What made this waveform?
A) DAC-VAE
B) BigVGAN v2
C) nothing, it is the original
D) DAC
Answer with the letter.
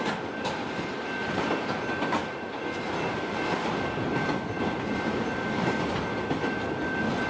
B